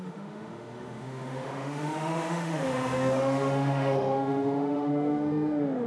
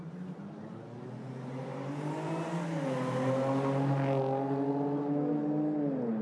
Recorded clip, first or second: second